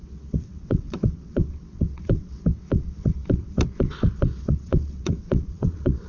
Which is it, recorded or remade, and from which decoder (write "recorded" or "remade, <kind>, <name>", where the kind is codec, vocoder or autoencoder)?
remade, vocoder, WaveNeXt